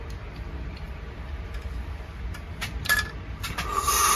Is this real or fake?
fake